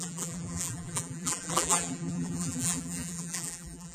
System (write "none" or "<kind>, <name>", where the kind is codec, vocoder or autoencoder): vocoder, BigVGAN v2